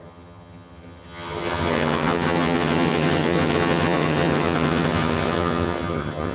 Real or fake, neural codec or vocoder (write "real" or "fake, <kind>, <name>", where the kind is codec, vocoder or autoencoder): fake, vocoder, HiFi-GAN